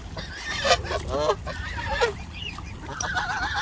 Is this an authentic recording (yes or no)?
yes